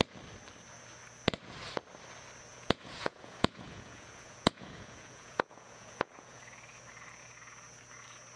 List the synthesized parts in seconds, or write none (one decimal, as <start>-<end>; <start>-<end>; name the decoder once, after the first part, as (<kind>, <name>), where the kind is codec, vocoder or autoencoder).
2.5-6.4 (vocoder, Vocos)